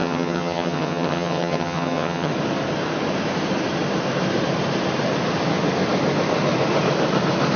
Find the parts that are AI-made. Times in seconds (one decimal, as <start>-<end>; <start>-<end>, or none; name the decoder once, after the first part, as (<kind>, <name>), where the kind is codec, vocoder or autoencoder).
0.0-2.3 (vocoder, HiFi-GAN)